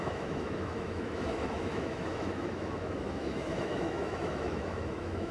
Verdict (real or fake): fake